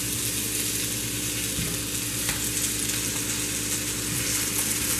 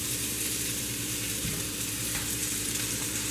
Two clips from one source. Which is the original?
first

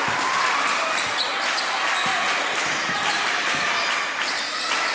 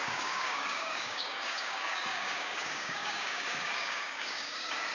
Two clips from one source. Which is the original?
first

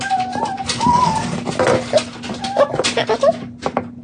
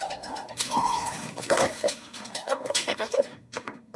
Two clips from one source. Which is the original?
first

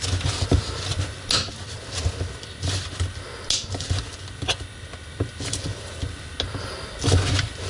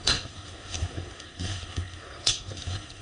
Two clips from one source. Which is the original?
first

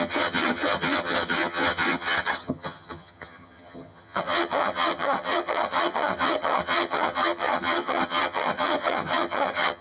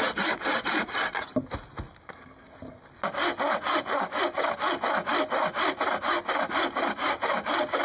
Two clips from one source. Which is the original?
second